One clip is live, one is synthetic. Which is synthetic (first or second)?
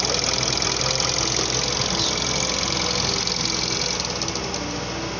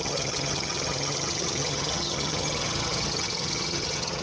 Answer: second